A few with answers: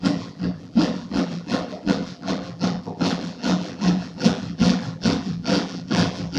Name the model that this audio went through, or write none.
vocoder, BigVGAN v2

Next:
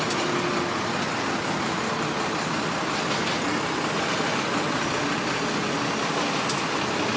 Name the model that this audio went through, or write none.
none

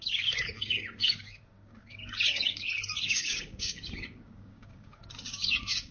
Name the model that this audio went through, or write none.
codec, DAC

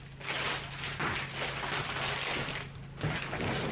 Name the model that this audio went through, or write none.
none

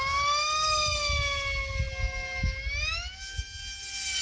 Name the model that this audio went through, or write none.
none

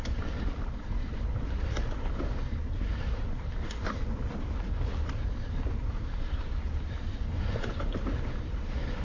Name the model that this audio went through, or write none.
vocoder, BigVGAN v2